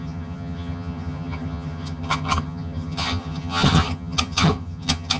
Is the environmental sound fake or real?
fake